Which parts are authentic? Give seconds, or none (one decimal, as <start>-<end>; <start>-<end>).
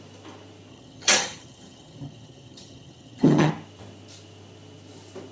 0.0-0.7; 3.5-5.3